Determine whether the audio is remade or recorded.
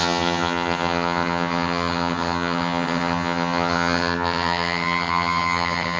remade